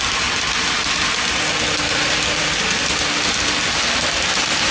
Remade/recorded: recorded